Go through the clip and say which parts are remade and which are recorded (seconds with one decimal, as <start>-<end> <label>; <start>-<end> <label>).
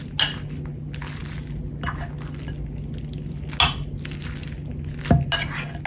0.0-5.9 recorded